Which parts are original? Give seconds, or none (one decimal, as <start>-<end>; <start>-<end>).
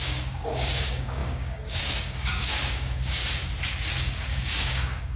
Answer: 3.2-4.0